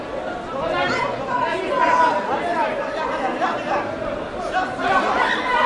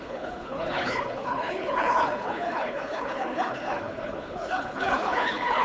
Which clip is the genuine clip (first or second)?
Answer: first